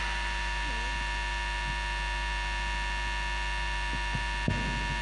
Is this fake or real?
real